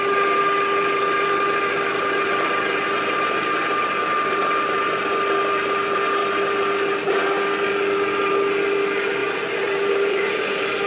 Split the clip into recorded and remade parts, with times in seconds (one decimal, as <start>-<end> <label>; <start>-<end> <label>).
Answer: 0.0-9.2 recorded; 9.2-10.4 remade; 10.4-10.9 recorded